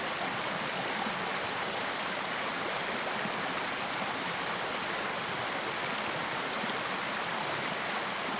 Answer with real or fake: real